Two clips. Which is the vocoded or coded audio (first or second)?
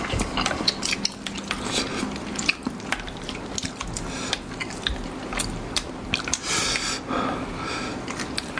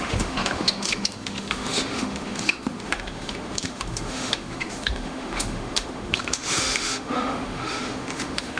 second